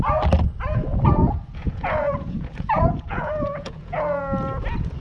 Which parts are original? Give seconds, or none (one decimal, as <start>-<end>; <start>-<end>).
0.0-1.2; 4.2-5.0